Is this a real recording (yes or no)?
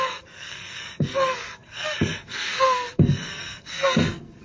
no